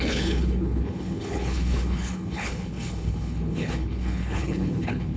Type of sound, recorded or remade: remade